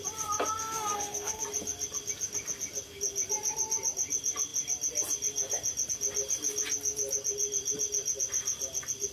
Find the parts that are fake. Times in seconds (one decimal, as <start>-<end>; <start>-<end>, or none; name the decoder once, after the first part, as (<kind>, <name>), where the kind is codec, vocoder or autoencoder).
0.6-1.4 (codec, SNAC)

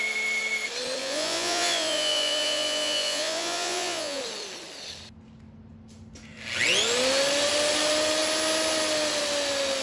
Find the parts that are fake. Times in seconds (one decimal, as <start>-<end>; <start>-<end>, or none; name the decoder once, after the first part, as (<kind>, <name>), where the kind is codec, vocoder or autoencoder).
1.0-4.2 (vocoder, Vocos)

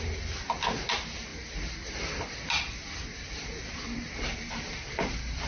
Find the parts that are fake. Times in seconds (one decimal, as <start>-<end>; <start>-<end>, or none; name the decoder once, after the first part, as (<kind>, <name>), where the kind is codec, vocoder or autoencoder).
none

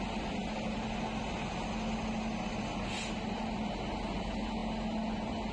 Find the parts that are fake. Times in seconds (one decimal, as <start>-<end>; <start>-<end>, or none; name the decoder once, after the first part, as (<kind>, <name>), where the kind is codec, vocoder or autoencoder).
none

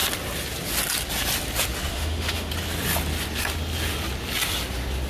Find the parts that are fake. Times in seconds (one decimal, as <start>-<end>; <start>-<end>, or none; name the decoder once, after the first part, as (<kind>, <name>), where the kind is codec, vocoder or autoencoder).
1.9-2.5 (autoencoder, DAC-VAE)